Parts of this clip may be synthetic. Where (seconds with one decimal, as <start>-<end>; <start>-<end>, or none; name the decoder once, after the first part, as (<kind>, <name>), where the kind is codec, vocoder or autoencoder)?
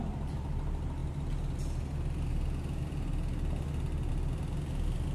none